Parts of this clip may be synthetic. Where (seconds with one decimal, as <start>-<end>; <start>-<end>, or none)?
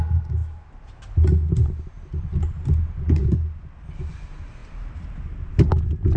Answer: none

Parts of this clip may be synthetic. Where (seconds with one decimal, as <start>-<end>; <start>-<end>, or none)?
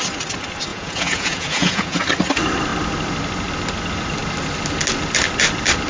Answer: 0.7-2.0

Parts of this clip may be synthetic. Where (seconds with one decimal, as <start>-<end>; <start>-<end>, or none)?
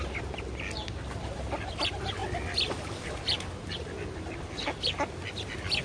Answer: none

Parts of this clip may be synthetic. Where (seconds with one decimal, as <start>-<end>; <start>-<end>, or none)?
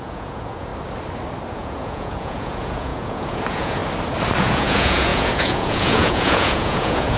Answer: 0.0-0.7; 1.5-3.8; 4.4-7.2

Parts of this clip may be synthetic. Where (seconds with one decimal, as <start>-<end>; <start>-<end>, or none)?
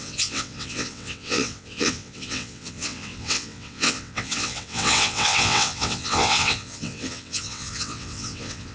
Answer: 0.0-8.7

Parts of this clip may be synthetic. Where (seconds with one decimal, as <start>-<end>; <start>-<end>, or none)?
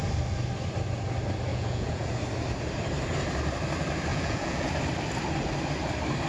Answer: 1.5-2.1; 4.1-4.7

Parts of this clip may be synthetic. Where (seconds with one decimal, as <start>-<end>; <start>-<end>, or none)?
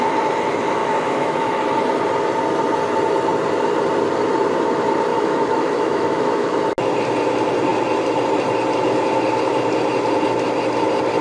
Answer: 0.8-1.6; 5.1-6.5